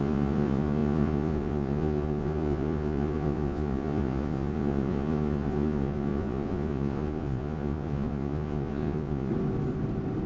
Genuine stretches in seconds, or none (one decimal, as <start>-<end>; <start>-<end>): 9.3-10.3